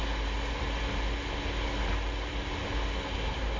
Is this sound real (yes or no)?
yes